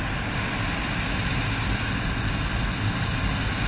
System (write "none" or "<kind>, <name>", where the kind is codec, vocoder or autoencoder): none